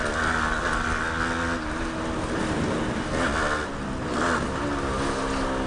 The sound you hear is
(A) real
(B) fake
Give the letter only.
A